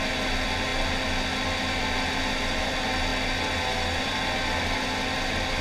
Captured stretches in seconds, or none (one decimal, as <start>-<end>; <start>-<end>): 0.0-5.6